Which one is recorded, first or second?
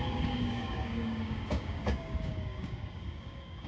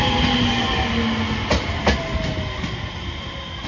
second